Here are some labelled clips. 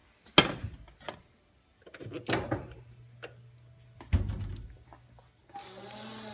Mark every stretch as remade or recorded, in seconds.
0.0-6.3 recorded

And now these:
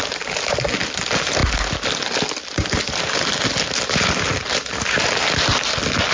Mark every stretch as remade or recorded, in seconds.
0.0-6.1 recorded

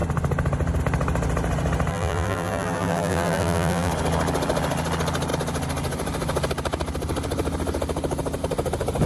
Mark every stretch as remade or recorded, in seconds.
0.0-1.9 recorded; 1.9-3.9 remade; 3.9-9.1 recorded

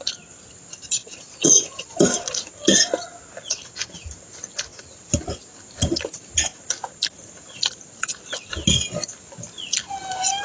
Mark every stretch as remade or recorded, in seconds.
0.0-10.4 recorded

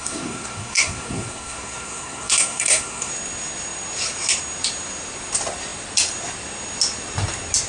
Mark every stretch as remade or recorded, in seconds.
0.0-3.1 remade; 3.1-7.7 recorded

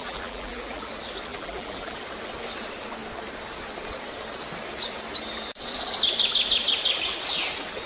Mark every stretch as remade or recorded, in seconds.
0.0-0.9 remade; 0.9-1.3 recorded; 1.3-2.0 remade; 2.0-7.9 recorded

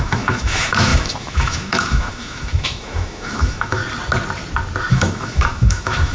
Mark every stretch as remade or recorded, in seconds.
0.0-3.8 remade; 3.8-4.9 recorded; 4.9-6.1 remade